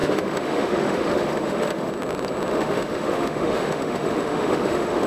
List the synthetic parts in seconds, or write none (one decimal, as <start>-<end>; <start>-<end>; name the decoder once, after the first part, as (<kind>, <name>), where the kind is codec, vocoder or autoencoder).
0.0-1.9 (autoencoder, DAC-VAE); 2.5-5.1